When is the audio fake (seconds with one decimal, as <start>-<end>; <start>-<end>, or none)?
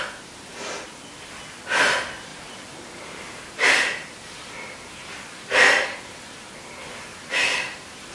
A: 2.3-6.5; 7.1-8.1